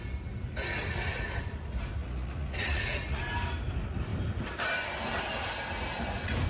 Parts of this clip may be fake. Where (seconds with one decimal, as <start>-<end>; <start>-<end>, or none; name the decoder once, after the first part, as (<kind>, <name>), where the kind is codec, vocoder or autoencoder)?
2.0-3.2 (vocoder, Vocos)